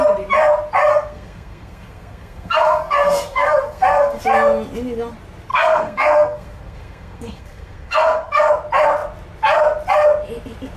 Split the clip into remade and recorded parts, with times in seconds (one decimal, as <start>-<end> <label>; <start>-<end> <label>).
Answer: 0.0-0.9 recorded; 0.9-4.2 remade; 4.2-5.5 recorded; 5.5-8.5 remade; 8.5-10.8 recorded